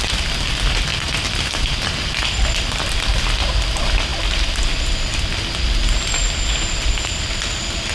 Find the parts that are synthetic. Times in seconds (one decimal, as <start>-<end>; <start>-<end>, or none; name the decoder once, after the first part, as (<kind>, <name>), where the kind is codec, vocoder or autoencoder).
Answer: none